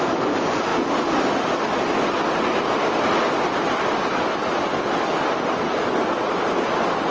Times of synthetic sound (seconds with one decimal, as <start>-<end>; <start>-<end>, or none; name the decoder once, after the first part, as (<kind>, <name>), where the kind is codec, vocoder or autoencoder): none